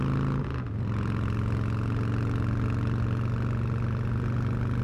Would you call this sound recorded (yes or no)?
yes